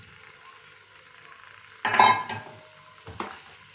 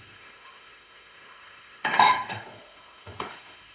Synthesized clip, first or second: second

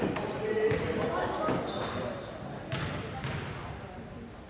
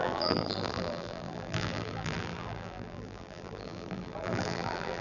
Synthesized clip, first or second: second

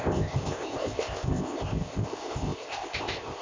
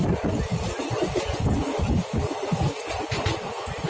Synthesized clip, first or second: first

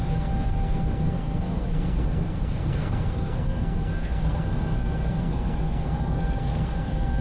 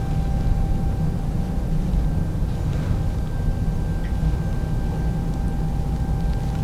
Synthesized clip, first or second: first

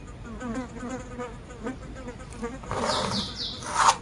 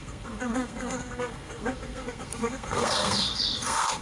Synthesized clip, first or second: second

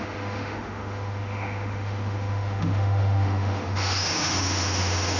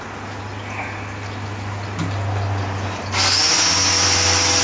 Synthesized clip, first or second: first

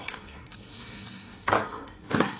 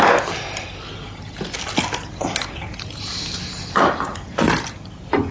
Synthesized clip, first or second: first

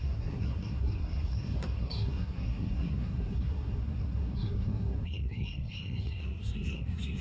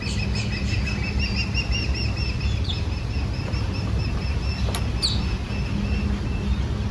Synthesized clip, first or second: first